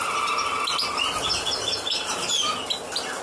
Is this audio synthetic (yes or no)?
no